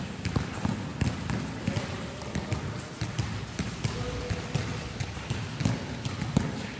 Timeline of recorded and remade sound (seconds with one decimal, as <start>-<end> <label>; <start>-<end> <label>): 0.0-6.8 recorded